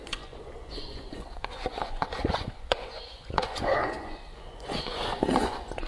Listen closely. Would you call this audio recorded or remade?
remade